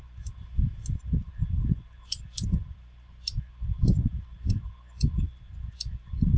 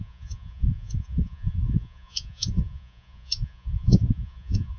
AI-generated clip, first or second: second